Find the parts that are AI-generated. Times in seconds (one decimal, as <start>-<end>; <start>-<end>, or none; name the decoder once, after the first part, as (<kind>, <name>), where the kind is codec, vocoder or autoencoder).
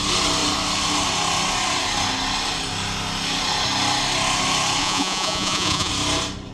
4.8-5.9 (vocoder, Vocos)